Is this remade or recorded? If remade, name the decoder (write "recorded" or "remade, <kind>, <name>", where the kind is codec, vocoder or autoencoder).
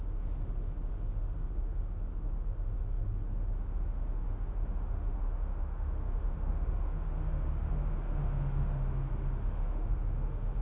remade, autoencoder, DAC-VAE